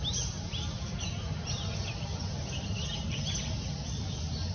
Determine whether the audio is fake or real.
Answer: real